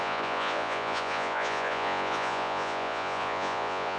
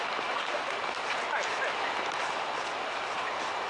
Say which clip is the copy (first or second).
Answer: first